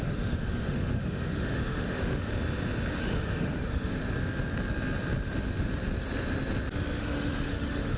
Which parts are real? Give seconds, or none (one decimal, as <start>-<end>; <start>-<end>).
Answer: 2.3-3.0; 4.0-7.0